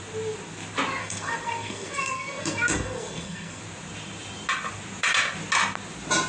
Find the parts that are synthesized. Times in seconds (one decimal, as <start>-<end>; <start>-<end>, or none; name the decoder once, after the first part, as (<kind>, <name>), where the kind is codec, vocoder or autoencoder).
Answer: 1.0-3.6 (codec, SNAC)